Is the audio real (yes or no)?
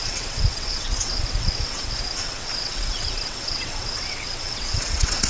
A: no